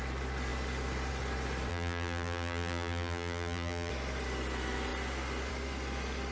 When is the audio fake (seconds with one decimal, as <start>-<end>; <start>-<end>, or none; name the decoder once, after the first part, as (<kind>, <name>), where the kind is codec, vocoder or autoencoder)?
1.7-3.9 (vocoder, BigVGAN v2)